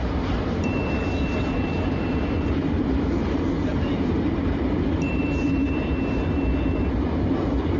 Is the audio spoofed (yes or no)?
yes